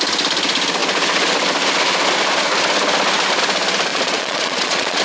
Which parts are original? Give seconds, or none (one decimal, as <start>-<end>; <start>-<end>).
0.0-3.9